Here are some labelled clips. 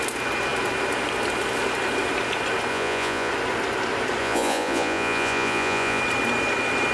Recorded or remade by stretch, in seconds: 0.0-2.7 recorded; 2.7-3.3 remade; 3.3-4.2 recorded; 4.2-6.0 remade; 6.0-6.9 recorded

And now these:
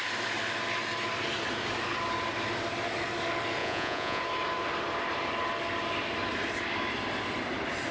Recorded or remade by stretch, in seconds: 0.0-3.6 recorded; 3.6-4.2 remade; 4.2-7.9 recorded

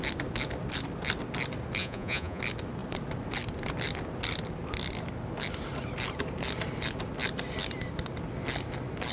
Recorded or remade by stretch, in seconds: 0.0-1.8 recorded; 1.8-2.4 remade; 2.4-9.1 recorded

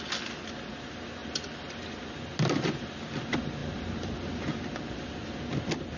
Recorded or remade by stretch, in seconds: 0.0-6.0 recorded

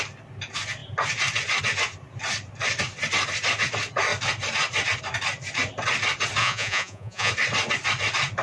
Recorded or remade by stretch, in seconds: 0.0-6.4 recorded; 6.4-7.3 remade; 7.3-8.4 recorded

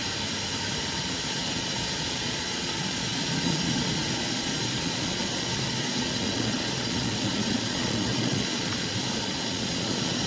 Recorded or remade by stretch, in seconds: 0.0-1.0 recorded; 1.0-10.3 remade

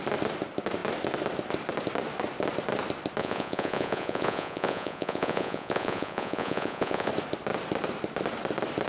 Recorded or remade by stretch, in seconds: 0.0-3.2 recorded; 3.2-7.1 remade; 7.1-8.9 recorded